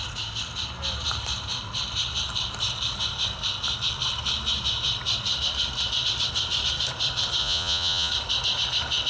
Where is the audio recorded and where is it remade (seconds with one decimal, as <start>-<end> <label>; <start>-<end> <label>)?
0.0-7.4 recorded; 7.4-8.1 remade; 8.1-9.1 recorded